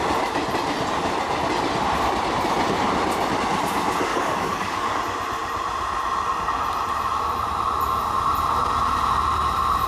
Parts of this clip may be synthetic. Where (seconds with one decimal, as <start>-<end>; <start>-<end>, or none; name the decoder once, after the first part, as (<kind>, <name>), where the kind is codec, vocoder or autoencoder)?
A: 4.1-5.0 (codec, DAC)